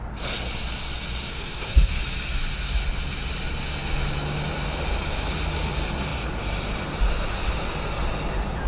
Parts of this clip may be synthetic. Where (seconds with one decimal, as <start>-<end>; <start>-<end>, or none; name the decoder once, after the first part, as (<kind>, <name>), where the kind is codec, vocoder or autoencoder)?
1.3-1.9 (codec, SNAC)